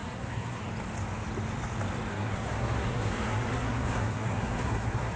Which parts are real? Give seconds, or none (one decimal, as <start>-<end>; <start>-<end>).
0.6-2.1